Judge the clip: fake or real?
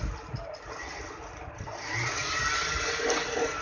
real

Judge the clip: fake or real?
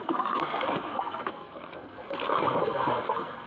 fake